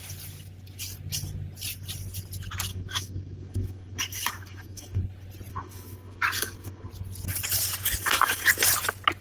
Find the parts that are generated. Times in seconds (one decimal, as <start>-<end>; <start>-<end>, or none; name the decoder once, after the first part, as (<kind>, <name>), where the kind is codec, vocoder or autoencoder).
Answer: 2.7-5.0 (codec, DAC); 5.5-6.9; 8.0-8.5